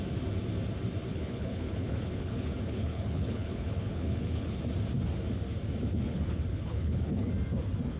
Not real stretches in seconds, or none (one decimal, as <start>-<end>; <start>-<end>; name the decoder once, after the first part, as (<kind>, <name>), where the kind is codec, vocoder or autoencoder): 1.1-4.6 (codec, HILCodec); 5.9-7.3